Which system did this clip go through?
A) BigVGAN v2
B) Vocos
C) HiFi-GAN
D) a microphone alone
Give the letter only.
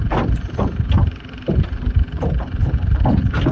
A